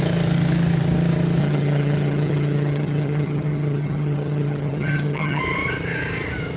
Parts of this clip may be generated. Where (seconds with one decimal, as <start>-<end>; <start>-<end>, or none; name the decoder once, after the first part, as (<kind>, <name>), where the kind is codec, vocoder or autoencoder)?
1.4-5.4 (vocoder, HiFi-GAN)